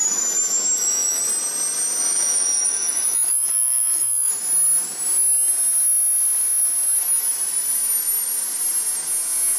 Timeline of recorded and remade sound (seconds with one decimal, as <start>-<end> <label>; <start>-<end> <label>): 0.0-1.2 remade; 1.2-2.0 recorded; 2.0-4.3 remade; 4.3-9.6 recorded